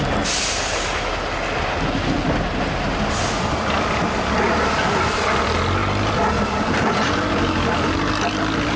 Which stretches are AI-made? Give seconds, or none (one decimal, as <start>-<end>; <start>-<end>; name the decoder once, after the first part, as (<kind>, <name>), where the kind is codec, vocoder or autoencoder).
none